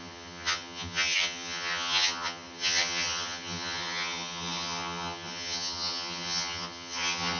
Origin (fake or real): fake